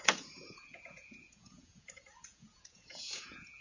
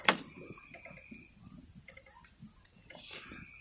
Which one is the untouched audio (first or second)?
second